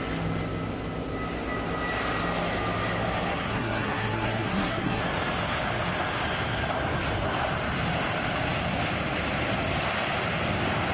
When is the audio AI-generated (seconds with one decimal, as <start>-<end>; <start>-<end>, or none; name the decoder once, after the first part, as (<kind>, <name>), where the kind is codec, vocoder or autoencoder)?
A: 3.3-5.0 (codec, SNAC)